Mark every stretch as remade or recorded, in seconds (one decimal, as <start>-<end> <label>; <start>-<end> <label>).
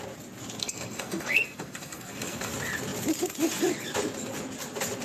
0.0-0.6 recorded; 0.6-2.5 remade; 2.5-5.0 recorded